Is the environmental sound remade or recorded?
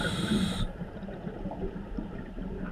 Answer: remade